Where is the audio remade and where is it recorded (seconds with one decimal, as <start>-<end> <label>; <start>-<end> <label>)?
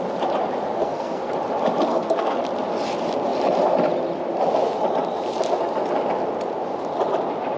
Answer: 0.0-0.8 recorded; 0.8-1.3 remade; 1.3-1.9 recorded; 1.9-2.4 remade; 2.4-7.6 recorded